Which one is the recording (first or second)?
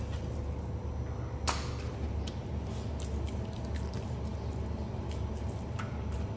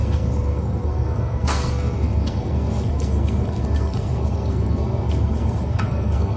first